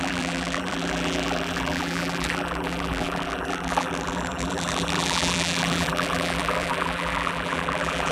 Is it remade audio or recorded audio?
remade